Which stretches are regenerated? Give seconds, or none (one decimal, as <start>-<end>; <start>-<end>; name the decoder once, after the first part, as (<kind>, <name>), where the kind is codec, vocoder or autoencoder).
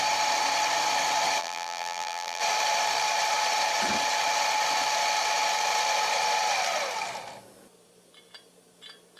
1.4-2.4 (vocoder, BigVGAN v2)